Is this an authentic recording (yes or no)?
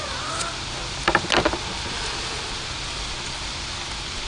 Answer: yes